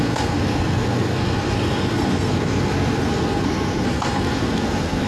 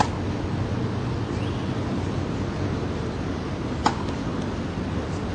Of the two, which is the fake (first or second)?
first